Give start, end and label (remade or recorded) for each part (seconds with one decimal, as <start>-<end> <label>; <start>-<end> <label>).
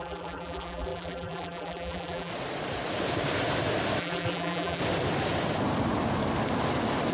0.0-2.3 remade; 2.3-4.0 recorded; 4.0-4.8 remade; 4.8-7.1 recorded